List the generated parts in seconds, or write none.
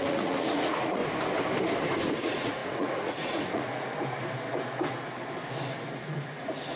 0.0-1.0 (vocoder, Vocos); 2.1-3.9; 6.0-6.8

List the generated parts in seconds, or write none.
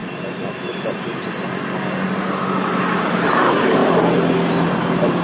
2.1-3.8 (vocoder, BigVGAN v2); 4.5-5.2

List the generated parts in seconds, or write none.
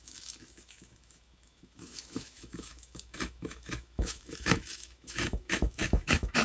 0.0-6.4 (autoencoder, DAC-VAE)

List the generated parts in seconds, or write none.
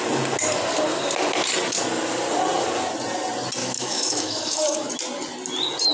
3.6-4.9 (autoencoder, DAC-VAE)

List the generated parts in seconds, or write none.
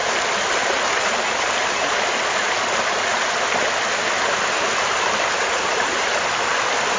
5.5-6.1 (vocoder, BigVGAN v2)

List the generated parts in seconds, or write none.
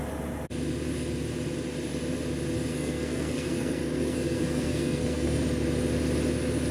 2.7-5.4 (codec, SNAC)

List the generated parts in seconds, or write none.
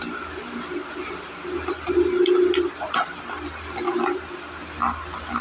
none